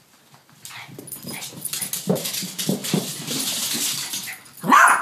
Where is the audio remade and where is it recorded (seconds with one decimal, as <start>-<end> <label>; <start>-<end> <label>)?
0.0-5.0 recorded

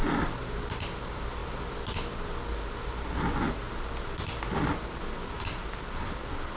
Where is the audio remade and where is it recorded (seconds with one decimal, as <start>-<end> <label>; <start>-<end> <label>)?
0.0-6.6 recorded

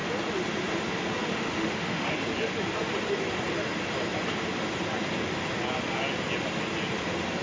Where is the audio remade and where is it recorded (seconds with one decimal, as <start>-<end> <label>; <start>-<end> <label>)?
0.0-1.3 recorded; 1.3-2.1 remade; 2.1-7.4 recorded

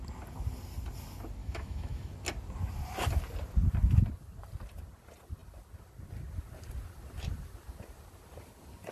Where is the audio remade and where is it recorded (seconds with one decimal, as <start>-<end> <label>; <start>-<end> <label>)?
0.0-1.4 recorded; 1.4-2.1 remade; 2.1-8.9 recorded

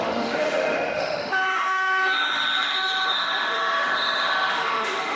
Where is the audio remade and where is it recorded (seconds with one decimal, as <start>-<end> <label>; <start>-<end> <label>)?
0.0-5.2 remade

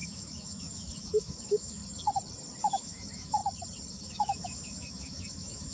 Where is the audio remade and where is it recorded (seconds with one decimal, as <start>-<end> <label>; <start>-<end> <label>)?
0.0-1.8 remade; 1.8-2.6 recorded; 2.6-3.4 remade; 3.4-3.9 recorded; 3.9-5.7 remade